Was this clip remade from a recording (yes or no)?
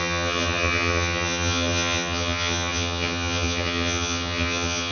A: yes